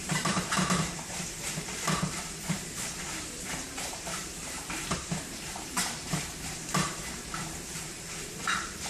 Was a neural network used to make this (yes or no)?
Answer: yes